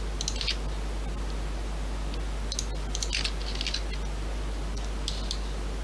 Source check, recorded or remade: recorded